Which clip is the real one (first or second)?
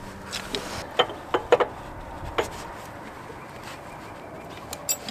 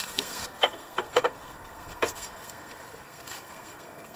first